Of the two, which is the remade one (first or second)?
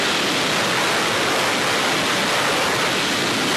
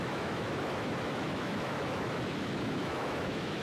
second